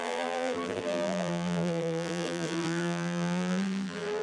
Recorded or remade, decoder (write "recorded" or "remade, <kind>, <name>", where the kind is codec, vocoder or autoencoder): remade, vocoder, BigVGAN v2